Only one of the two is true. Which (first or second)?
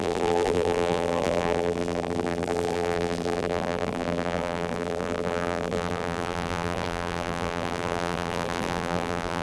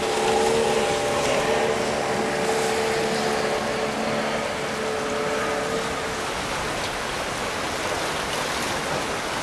second